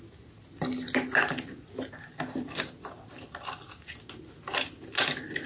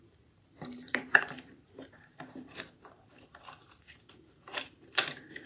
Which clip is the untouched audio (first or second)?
first